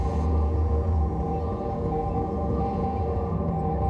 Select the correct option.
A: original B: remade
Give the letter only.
B